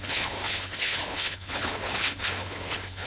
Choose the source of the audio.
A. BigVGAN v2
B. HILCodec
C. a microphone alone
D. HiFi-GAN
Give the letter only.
B